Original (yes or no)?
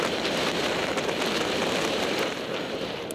no